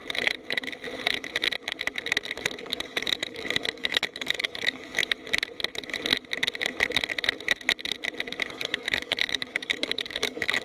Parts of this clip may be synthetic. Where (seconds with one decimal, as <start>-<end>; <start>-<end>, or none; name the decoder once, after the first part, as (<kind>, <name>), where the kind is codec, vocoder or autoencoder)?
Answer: 2.6-5.0 (codec, DAC); 8.5-10.6